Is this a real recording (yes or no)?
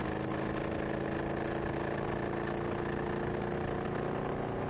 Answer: yes